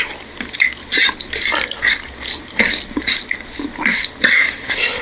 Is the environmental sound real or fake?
real